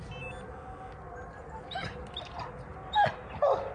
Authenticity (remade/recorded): recorded